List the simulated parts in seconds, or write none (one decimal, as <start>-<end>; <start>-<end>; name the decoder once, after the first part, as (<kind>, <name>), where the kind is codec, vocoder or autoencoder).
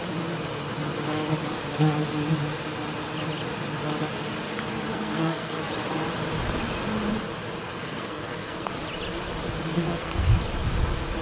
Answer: 4.9-5.7 (codec, SNAC); 7.6-8.7; 9.7-10.4